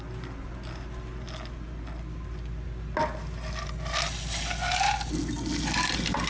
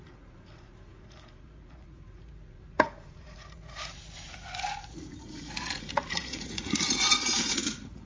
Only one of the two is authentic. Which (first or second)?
first